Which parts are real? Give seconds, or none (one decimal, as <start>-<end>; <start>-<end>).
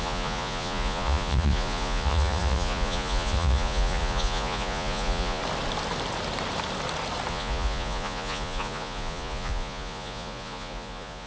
5.4-7.3